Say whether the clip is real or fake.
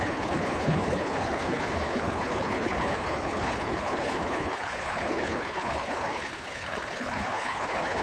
fake